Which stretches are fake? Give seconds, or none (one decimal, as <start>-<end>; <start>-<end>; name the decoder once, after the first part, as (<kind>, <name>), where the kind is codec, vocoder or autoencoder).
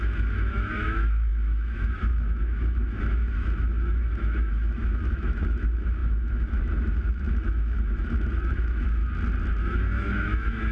0.0-9.0 (autoencoder, DAC-VAE); 9.6-10.7